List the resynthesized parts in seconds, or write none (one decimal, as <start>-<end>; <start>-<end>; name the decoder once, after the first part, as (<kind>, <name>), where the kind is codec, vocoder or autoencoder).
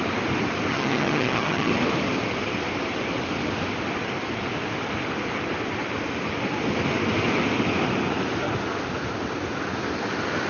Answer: 0.7-1.7 (vocoder, HiFi-GAN)